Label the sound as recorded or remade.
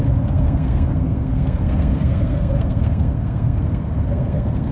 remade